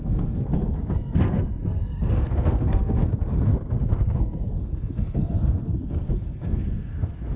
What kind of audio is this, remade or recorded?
remade